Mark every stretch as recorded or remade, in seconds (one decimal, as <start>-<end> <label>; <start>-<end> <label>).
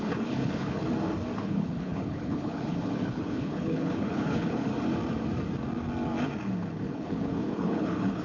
0.0-0.8 remade; 0.8-1.4 recorded; 1.4-4.7 remade; 4.7-6.8 recorded; 6.8-8.2 remade